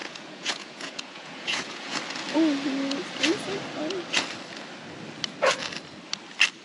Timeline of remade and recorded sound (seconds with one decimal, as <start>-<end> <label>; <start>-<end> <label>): 0.0-2.0 remade; 2.0-6.6 recorded